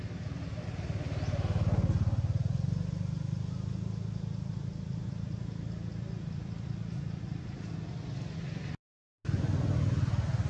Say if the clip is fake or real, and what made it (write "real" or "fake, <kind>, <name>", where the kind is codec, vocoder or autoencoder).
real